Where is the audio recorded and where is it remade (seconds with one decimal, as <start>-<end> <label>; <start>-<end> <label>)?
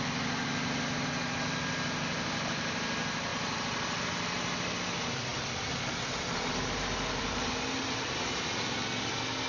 0.0-9.5 recorded